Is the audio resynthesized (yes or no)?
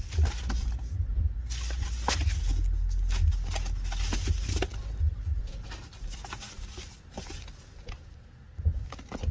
no